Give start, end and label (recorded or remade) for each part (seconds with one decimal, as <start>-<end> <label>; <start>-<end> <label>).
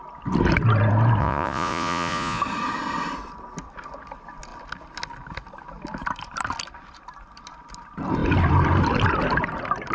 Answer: 0.0-1.2 recorded; 1.2-2.4 remade; 2.4-9.9 recorded